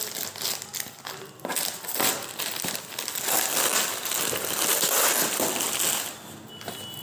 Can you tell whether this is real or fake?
real